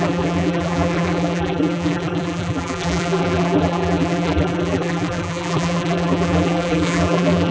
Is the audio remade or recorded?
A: remade